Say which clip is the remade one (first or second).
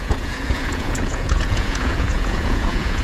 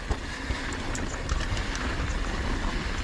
first